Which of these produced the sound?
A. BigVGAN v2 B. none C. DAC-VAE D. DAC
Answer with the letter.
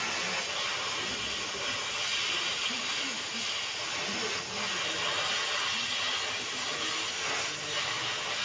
B